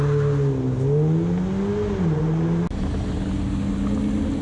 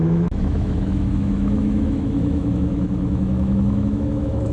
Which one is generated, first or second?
second